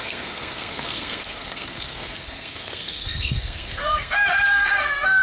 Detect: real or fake fake